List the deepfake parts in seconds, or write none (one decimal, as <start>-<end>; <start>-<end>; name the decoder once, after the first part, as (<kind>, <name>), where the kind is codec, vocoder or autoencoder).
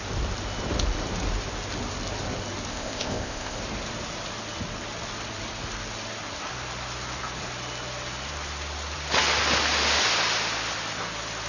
2.7-3.6 (codec, ZipCodec)